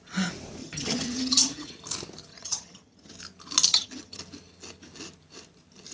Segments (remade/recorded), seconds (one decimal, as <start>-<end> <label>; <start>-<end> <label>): 0.0-0.6 recorded; 0.6-1.7 remade; 1.7-2.3 recorded; 2.3-3.1 remade; 3.1-3.7 recorded; 3.7-4.2 remade; 4.2-5.9 recorded